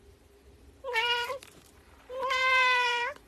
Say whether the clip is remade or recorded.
remade